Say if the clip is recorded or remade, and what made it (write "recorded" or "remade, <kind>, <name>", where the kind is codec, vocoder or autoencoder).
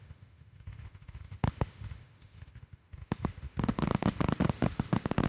remade, autoencoder, DAC-VAE